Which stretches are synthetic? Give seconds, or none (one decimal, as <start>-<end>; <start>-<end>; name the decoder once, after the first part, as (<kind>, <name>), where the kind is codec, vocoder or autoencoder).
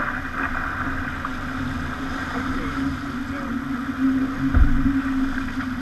none